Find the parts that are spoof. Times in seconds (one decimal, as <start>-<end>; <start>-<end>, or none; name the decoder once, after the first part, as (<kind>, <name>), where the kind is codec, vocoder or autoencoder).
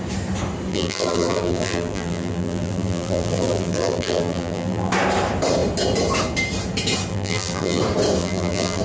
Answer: 0.7-4.9 (vocoder, BigVGAN v2); 7.1-7.8; 8.2-8.8